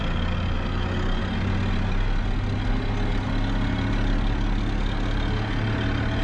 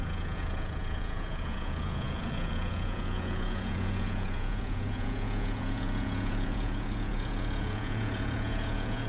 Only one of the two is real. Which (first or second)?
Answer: first